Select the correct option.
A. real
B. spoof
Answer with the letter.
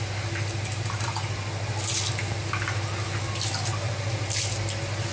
A